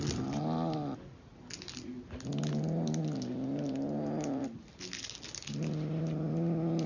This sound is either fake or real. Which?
real